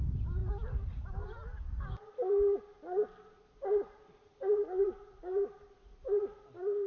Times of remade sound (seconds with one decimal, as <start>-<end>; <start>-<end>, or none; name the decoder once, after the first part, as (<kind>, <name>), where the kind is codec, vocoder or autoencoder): none